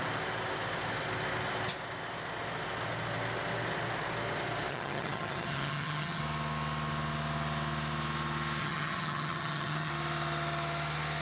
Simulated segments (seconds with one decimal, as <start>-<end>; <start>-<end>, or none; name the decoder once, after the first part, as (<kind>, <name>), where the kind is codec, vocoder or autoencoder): 4.7-6.2 (vocoder, HiFi-GAN); 8.6-9.9